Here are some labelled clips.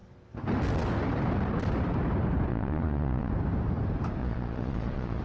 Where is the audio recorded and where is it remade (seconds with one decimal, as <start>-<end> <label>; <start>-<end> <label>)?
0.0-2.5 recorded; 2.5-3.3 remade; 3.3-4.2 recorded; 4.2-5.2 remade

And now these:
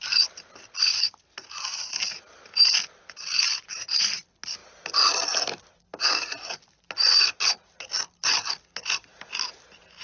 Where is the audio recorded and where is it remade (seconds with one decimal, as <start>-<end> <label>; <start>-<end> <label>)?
0.0-10.0 recorded

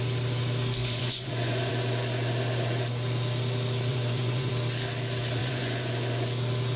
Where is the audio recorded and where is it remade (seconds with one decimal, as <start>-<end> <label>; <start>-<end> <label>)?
0.0-0.8 recorded; 0.8-1.7 remade; 1.7-3.9 recorded; 3.9-4.5 remade; 4.5-5.4 recorded; 5.4-5.9 remade; 5.9-6.8 recorded

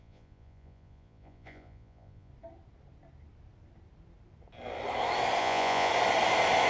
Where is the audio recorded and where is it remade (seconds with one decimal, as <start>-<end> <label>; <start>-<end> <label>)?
0.0-2.3 remade; 2.3-5.4 recorded; 5.4-5.9 remade; 5.9-6.7 recorded

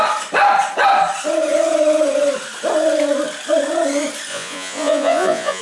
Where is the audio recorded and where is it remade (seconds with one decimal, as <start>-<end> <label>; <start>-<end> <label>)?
0.0-4.3 recorded; 4.3-5.6 remade

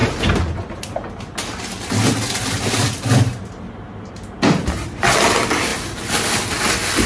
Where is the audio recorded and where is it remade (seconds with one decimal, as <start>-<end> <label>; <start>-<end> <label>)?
0.0-7.1 recorded

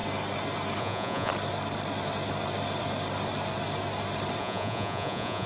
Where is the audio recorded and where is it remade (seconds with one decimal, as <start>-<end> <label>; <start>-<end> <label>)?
0.0-0.8 recorded; 0.8-1.3 remade; 1.3-4.4 recorded; 4.4-5.5 remade

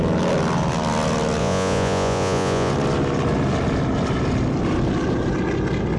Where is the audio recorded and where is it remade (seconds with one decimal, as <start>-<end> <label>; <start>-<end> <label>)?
0.0-1.4 recorded; 1.4-2.7 remade; 2.7-6.0 recorded